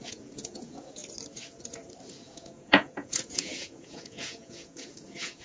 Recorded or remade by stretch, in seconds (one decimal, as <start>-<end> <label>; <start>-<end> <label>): 0.0-1.0 remade; 1.0-2.2 recorded; 2.2-5.4 remade